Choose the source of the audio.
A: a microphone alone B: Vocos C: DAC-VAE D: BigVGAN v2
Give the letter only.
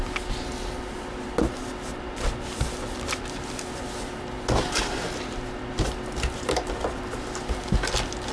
A